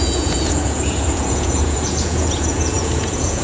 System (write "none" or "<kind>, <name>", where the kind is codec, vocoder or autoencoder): vocoder, Vocos